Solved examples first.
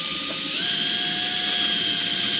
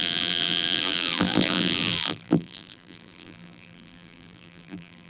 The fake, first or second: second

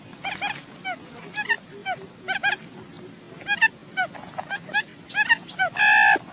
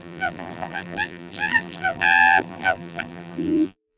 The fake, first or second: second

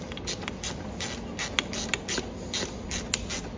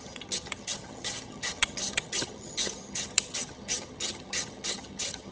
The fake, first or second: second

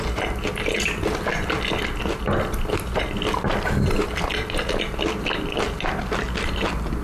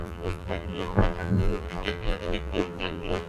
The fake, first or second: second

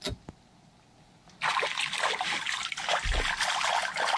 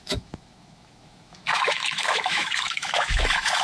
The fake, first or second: second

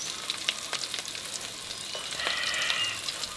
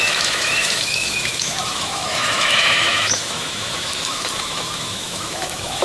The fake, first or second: second